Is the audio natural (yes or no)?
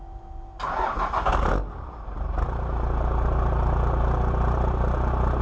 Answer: yes